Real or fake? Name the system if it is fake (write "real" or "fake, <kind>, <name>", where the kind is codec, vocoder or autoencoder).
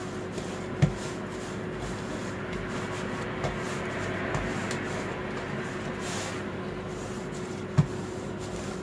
real